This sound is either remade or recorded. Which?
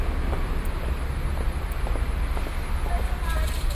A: recorded